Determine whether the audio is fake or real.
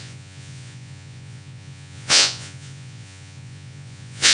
fake